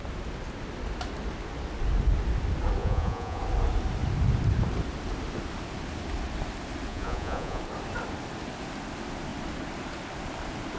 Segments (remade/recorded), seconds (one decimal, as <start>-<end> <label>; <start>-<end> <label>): 0.0-2.8 recorded; 2.8-3.4 remade; 3.4-6.9 recorded; 6.9-7.6 remade; 7.6-10.8 recorded